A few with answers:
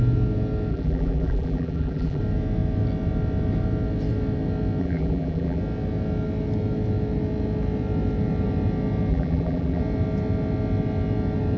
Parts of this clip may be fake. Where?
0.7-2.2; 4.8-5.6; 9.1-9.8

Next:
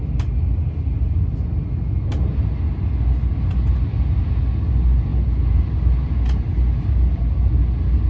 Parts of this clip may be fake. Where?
none

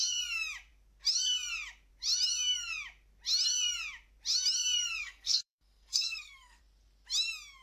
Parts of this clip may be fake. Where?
5.0-6.6

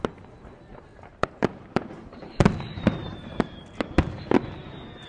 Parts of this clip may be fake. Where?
0.9-3.8